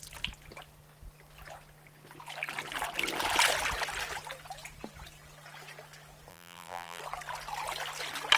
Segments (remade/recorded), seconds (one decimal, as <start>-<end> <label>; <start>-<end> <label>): 0.0-6.3 recorded; 6.3-7.0 remade; 7.0-8.4 recorded